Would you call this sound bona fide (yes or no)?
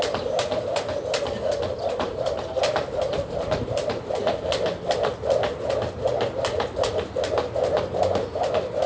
yes